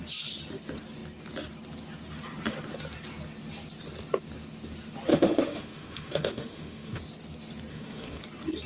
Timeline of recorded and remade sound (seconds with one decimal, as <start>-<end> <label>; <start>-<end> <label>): 0.0-5.1 recorded; 5.1-7.0 remade; 7.0-7.7 recorded; 7.7-8.2 remade; 8.2-8.7 recorded